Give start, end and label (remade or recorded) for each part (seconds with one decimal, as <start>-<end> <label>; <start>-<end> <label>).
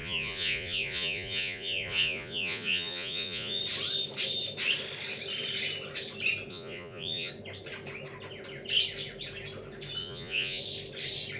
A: 0.0-3.6 remade; 3.6-6.5 recorded; 6.5-7.3 remade; 7.3-10.0 recorded; 10.0-10.6 remade; 10.6-11.4 recorded